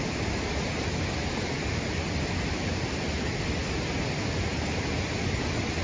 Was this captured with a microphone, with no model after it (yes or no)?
yes